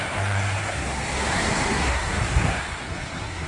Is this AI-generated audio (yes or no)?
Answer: yes